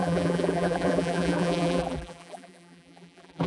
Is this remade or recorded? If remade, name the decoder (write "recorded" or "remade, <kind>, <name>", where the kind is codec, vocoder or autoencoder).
remade, vocoder, BigVGAN v2